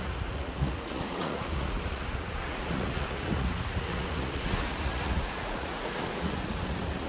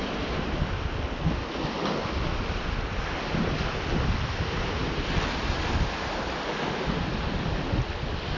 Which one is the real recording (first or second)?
second